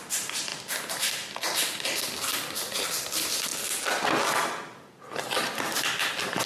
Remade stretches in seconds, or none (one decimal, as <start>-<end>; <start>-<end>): 0.0-3.5; 5.6-6.5